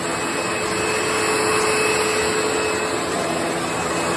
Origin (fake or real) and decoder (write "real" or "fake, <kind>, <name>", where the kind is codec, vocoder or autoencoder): real